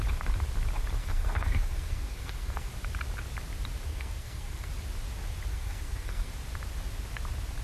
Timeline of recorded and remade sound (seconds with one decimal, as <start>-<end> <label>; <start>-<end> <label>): 0.0-1.0 recorded; 1.0-2.7 remade; 2.7-3.9 recorded; 3.9-4.7 remade; 4.7-5.5 recorded; 5.5-6.3 remade; 6.3-7.6 recorded

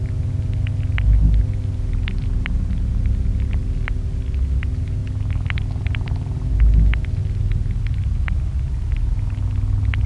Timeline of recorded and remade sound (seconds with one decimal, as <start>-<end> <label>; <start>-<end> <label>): 0.0-10.1 recorded

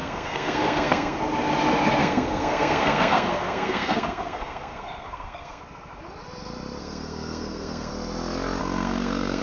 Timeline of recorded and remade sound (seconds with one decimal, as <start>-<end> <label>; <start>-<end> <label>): 0.0-1.2 remade; 1.2-2.0 recorded; 2.0-5.6 remade; 5.6-6.8 recorded; 6.8-7.9 remade; 7.9-8.6 recorded; 8.6-9.4 remade

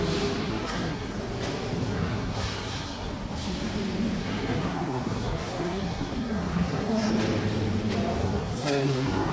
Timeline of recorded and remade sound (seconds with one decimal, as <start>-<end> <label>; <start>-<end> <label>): 0.0-0.4 recorded; 0.4-1.2 remade; 1.2-1.8 recorded; 1.8-3.1 remade; 3.1-4.2 recorded; 4.2-7.1 remade; 7.1-8.2 recorded; 8.2-9.3 remade

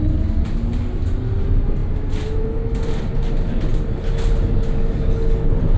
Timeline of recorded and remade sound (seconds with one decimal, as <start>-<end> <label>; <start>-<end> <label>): 0.0-5.8 recorded

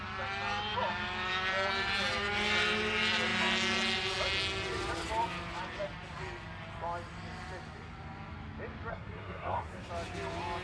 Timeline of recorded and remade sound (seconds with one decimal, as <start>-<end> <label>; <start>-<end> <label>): 0.0-8.9 recorded; 8.9-9.9 remade; 9.9-10.6 recorded

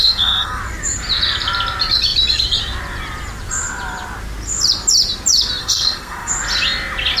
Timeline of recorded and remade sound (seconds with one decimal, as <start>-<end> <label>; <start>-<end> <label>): 0.0-0.6 remade; 0.6-5.6 recorded; 5.6-6.3 remade; 6.3-7.2 recorded